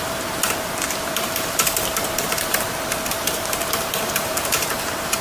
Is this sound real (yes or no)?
no